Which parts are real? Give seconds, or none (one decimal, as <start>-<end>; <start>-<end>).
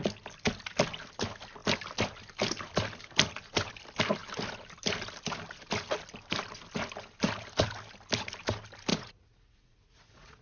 0.0-8.9